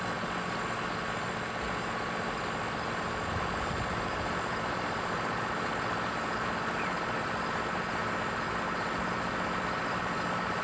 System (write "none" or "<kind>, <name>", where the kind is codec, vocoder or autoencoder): none